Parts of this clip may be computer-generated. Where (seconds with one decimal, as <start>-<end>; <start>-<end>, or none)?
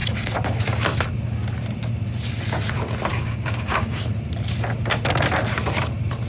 3.1-4.0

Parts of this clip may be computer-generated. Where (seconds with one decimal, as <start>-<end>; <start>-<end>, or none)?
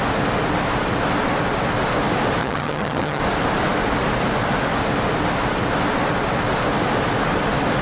2.4-3.2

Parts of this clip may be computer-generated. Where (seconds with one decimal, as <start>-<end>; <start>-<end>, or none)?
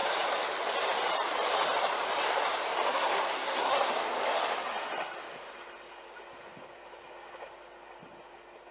2.9-3.9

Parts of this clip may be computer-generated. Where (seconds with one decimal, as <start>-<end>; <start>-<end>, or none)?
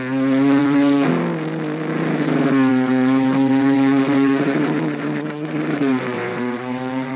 0.6-1.1; 2.7-7.2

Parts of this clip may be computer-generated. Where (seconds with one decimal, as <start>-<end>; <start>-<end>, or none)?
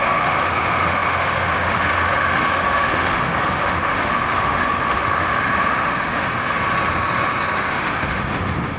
0.0-6.6; 7.7-8.8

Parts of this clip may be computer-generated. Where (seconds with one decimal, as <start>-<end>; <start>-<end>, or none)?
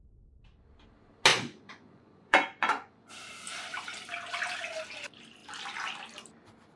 1.3-3.1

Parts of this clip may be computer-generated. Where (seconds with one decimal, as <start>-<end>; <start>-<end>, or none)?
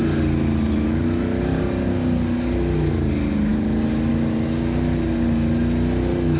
none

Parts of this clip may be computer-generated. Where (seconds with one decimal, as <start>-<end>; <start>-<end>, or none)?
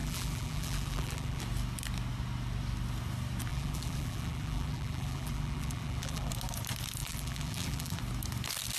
0.0-1.4; 3.5-6.3; 7.0-8.0